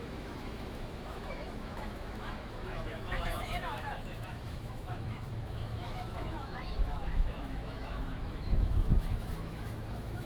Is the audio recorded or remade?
remade